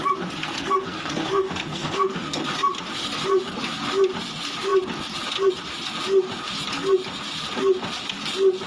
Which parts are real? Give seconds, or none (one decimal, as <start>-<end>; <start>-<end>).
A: 0.0-0.4; 2.4-8.7